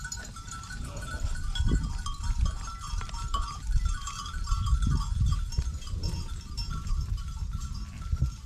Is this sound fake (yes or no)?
yes